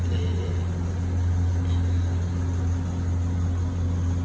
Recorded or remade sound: recorded